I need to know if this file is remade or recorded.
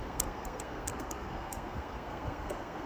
remade